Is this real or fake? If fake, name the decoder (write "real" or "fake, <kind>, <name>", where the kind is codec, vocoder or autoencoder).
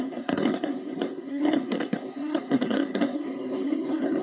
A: fake, codec, SNAC